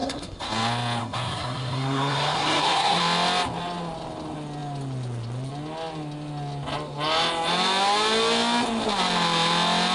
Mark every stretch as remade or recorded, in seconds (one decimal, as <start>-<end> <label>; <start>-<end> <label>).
0.0-0.5 remade; 0.5-1.0 recorded; 1.0-3.0 remade; 3.0-9.9 recorded